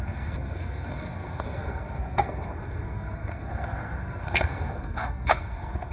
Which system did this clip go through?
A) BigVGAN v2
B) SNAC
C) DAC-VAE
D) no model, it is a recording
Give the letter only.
B